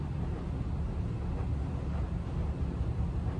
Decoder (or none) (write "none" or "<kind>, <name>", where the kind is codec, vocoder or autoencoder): none